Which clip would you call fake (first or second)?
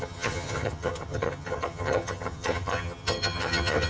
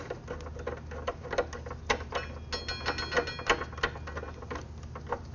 first